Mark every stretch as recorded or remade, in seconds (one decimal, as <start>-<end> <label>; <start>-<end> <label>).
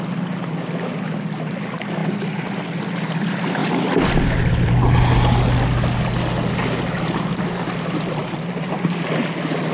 0.0-3.6 recorded; 3.6-4.7 remade; 4.7-8.2 recorded; 8.2-9.0 remade; 9.0-9.7 recorded